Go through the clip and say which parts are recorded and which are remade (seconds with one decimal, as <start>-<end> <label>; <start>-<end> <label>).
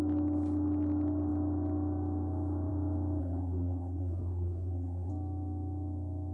0.0-3.2 recorded; 3.2-5.1 remade; 5.1-6.3 recorded